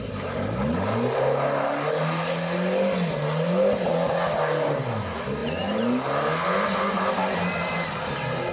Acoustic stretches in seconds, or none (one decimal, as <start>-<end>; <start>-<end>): 0.0-8.5